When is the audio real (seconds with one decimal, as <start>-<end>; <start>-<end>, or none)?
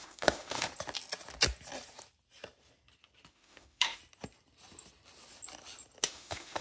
0.7-3.3; 4.0-6.0